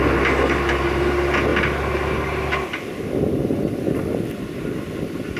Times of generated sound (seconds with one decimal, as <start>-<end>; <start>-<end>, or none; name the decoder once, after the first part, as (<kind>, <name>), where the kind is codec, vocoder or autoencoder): none